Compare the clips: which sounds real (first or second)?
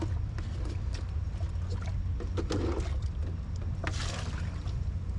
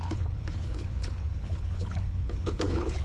first